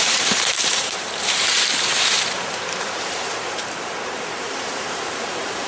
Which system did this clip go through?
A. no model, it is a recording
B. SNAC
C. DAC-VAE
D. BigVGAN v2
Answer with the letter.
D